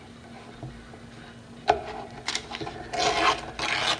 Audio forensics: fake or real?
real